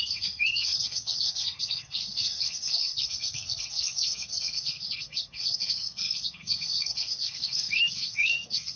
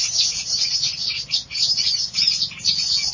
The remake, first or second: first